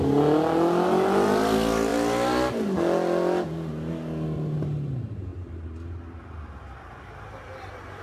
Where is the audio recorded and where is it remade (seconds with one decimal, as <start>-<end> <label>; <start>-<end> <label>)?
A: 0.0-8.0 recorded